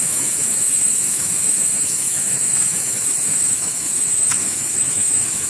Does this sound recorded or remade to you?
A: remade